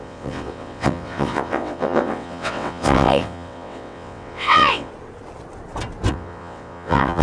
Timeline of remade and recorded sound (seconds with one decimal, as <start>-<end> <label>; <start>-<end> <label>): 0.0-4.9 remade; 4.9-6.1 recorded; 6.1-7.2 remade